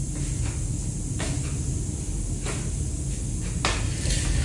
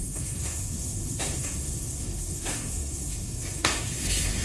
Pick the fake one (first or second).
second